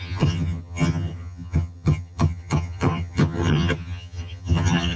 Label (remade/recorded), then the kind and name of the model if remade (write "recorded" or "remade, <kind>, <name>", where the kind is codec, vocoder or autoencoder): remade, vocoder, HiFi-GAN